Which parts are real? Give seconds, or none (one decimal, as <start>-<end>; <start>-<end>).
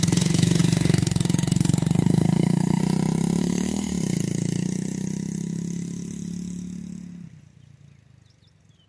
2.8-3.4; 3.9-8.9